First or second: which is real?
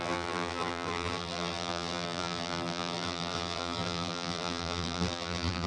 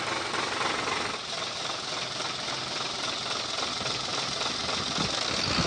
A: second